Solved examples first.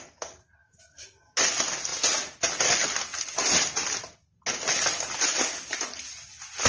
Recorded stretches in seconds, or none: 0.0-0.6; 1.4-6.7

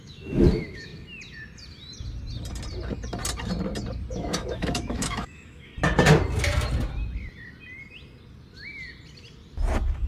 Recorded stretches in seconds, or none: 0.9-4.1; 5.7-10.1

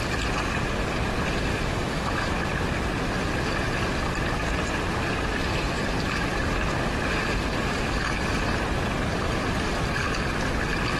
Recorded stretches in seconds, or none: 0.0-1.5; 2.3-11.0

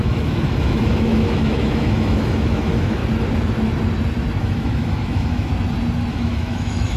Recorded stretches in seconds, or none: 3.0-4.4; 5.5-6.1

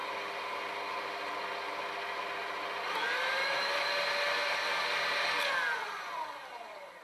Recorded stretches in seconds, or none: 0.0-3.4; 3.9-7.0